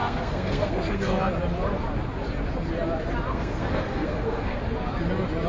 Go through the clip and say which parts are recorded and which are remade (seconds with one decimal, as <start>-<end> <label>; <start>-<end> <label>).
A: 0.0-1.3 remade; 1.3-3.3 recorded; 3.3-4.6 remade; 4.6-5.5 recorded